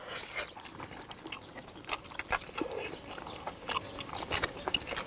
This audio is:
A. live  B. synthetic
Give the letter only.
A